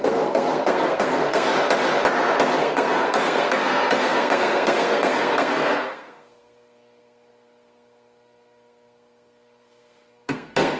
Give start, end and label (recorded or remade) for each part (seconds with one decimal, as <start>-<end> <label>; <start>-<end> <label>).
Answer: 0.0-1.5 remade; 1.5-2.6 recorded; 2.6-10.8 remade